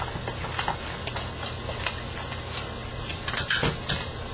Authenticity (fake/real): real